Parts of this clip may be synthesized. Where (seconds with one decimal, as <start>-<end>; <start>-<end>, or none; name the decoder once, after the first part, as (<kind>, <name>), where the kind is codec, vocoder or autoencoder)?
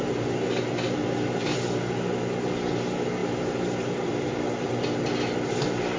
3.2-6.0 (vocoder, BigVGAN v2)